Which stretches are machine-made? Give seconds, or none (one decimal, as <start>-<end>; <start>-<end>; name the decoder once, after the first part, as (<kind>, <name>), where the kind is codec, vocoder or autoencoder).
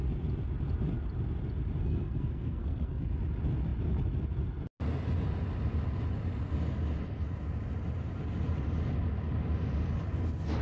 1.8-3.0 (codec, SNAC)